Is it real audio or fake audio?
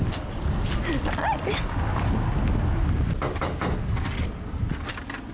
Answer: real